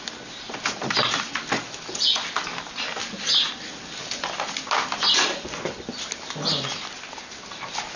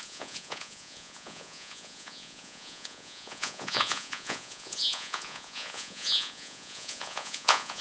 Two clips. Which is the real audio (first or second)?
first